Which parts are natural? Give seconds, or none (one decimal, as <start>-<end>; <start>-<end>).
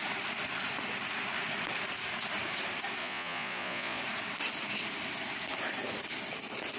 0.0-3.0; 4.0-6.8